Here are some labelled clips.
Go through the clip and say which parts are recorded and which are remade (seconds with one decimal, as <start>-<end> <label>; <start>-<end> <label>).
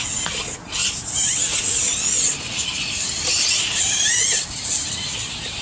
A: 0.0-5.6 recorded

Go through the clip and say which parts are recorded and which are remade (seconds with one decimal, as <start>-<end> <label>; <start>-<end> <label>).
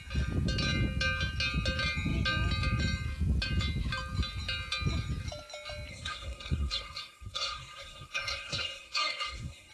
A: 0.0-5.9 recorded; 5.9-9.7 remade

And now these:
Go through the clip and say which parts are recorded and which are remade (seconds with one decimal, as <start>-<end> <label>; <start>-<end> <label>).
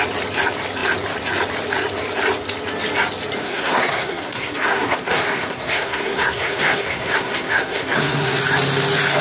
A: 0.0-3.4 recorded; 3.4-8.4 remade; 8.4-9.2 recorded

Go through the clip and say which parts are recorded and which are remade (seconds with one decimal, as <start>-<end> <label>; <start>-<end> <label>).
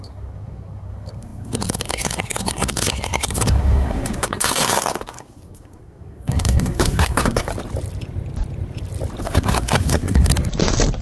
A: 0.0-7.5 remade; 7.5-9.2 recorded; 9.2-10.3 remade; 10.3-11.0 recorded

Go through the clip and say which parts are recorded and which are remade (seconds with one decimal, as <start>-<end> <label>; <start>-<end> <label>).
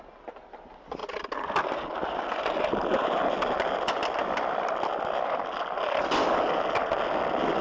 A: 0.0-7.6 recorded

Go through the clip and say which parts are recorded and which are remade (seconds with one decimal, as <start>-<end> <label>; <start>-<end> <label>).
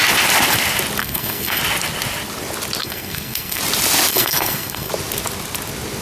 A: 0.0-1.0 recorded; 1.0-1.6 remade; 1.6-2.8 recorded; 2.8-3.6 remade; 3.6-4.1 recorded; 4.1-4.9 remade; 4.9-6.0 recorded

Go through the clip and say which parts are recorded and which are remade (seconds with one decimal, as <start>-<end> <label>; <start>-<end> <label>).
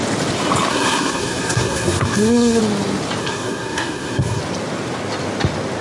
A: 0.0-0.7 recorded; 0.7-2.6 remade; 2.6-3.2 recorded; 3.2-4.4 remade; 4.4-5.8 recorded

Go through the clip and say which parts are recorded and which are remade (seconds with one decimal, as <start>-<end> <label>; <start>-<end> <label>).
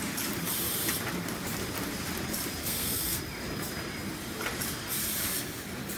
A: 0.0-2.6 recorded; 2.6-3.2 remade; 3.2-6.0 recorded